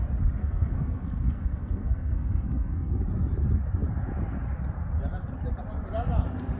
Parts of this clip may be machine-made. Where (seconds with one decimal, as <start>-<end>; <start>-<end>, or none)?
0.4-3.0